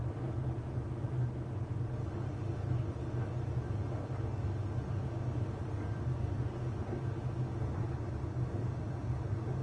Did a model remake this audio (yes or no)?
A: no